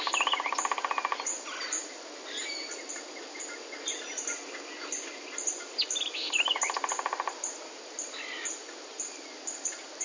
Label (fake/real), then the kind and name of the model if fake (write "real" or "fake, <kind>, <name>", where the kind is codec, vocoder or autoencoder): real